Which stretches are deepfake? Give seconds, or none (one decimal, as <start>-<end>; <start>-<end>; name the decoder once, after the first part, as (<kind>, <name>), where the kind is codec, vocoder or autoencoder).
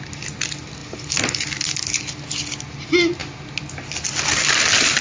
none